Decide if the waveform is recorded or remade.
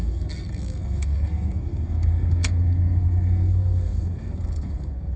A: remade